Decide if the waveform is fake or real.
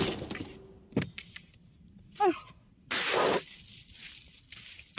real